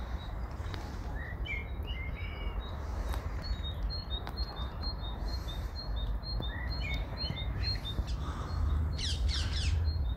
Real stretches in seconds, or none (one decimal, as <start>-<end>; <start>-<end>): 1.6-2.1